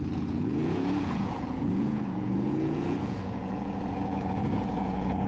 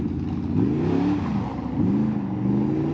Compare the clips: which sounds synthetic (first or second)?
first